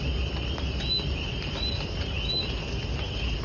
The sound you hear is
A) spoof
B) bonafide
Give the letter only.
B